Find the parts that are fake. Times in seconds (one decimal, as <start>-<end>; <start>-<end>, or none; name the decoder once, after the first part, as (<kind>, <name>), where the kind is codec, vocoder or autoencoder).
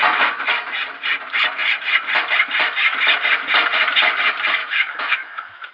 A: 4.6-5.7 (autoencoder, DAC-VAE)